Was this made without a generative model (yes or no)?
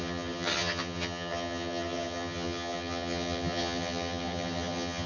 no